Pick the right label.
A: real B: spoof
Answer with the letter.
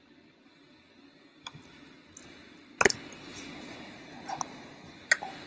A